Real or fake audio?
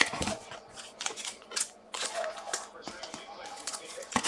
fake